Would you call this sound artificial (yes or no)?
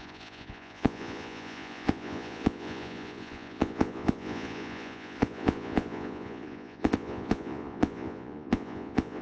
yes